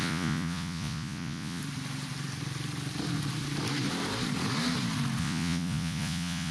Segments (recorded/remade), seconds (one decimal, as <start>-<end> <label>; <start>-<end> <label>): 0.0-1.6 remade; 1.6-5.2 recorded; 5.2-6.5 remade